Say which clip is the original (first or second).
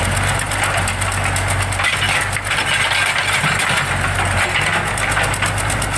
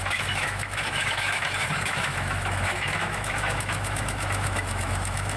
first